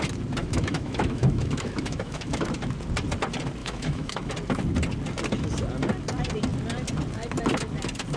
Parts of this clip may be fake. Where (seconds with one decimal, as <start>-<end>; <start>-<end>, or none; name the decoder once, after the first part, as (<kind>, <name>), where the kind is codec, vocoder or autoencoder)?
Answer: 0.4-2.4 (autoencoder, DAC-VAE); 3.6-4.3